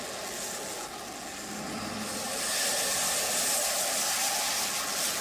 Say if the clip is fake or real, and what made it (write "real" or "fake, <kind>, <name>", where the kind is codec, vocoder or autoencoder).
real